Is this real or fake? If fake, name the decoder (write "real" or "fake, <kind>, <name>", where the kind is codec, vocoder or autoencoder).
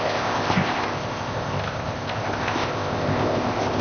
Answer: fake, codec, ZipCodec